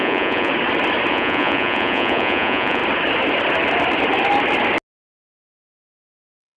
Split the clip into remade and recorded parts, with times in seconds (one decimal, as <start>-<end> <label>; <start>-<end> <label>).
0.0-0.5 remade; 0.5-1.1 recorded; 1.1-2.8 remade; 2.8-6.1 recorded; 6.1-6.6 remade